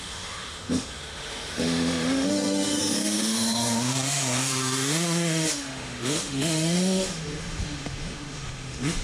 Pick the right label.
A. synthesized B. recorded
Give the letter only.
A